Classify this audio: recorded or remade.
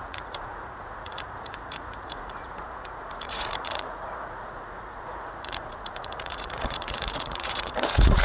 remade